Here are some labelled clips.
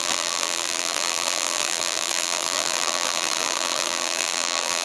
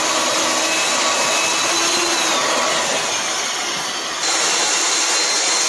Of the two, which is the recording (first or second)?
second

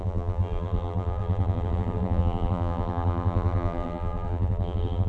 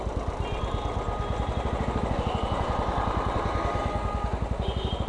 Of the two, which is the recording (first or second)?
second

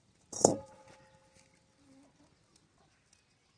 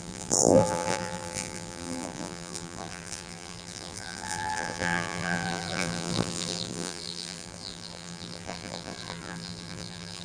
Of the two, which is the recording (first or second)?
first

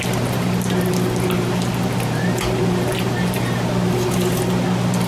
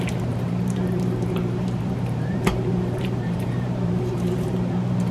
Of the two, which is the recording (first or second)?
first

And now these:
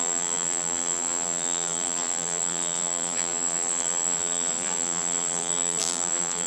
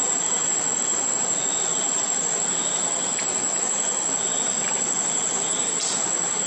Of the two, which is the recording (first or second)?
second